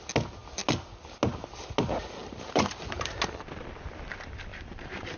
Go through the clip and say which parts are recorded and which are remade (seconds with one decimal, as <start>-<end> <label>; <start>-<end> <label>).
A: 0.0-2.2 recorded; 2.2-2.9 remade; 2.9-4.5 recorded; 4.5-5.2 remade